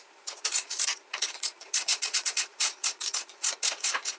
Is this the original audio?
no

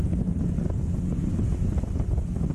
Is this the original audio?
yes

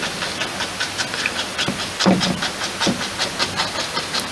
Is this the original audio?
yes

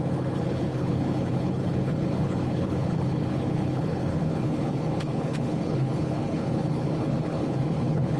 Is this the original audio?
no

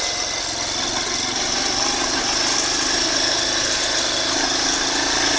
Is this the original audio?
yes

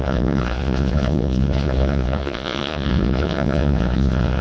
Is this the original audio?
no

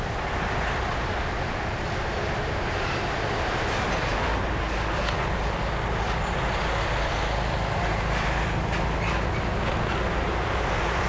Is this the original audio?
yes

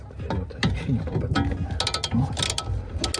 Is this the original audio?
yes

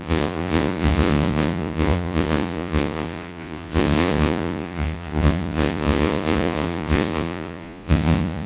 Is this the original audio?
no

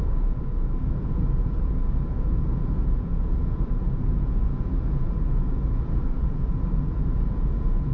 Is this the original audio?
no